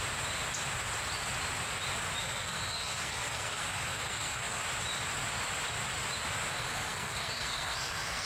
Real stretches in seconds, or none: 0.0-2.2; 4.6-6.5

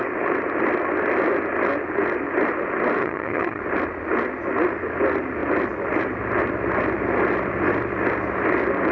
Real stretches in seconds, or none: 0.0-3.0; 3.6-8.9

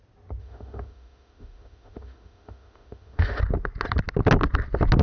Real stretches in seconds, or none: 0.0-0.4; 3.4-5.0

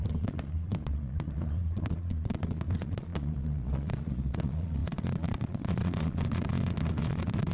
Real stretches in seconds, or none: none

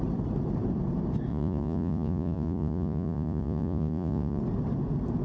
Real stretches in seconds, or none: 0.0-1.3; 4.4-5.2

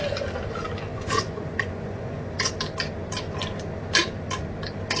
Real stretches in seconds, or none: 0.0-0.9; 2.5-5.0

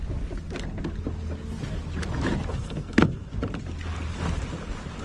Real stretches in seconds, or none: 0.0-2.5; 3.3-5.0